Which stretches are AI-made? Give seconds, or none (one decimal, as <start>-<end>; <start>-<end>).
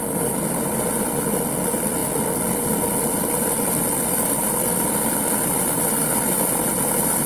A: none